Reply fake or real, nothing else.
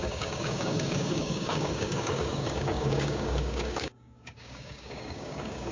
fake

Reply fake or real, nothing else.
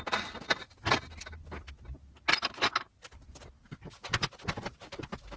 real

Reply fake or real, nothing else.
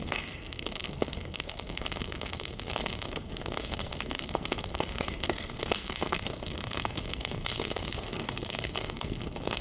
fake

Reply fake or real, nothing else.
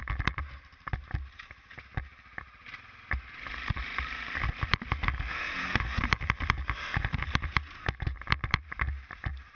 fake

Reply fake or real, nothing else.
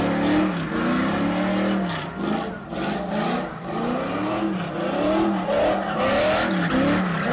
real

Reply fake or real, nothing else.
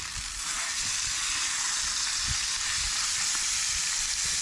real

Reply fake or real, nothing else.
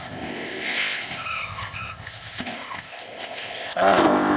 fake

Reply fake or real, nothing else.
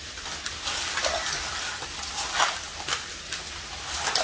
real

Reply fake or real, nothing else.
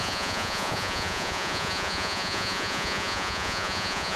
fake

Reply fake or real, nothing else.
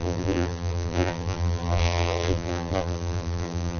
fake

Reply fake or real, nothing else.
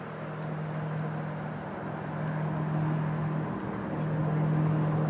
real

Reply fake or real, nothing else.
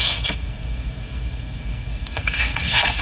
fake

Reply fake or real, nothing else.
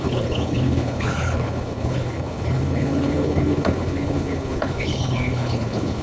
fake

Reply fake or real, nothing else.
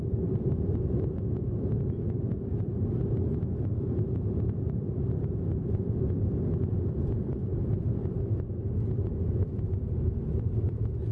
fake